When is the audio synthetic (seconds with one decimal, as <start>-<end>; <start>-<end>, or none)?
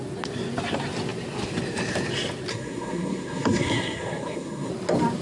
2.5-4.7